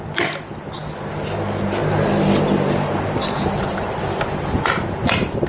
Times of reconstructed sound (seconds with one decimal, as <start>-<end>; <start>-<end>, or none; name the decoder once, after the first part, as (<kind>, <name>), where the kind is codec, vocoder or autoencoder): none